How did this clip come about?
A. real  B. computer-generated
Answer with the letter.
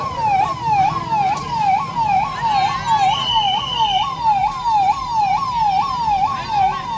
A